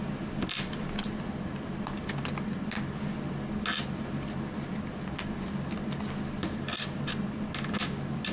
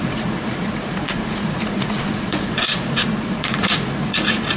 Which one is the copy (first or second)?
second